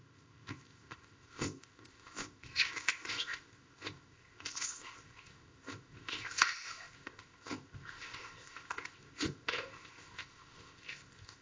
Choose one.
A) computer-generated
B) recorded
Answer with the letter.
A